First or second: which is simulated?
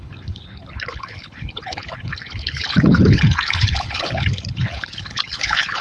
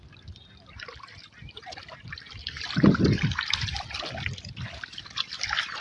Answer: first